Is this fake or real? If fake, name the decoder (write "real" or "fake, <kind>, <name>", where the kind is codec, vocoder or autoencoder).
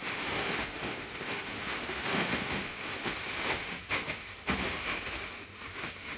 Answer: fake, autoencoder, DAC-VAE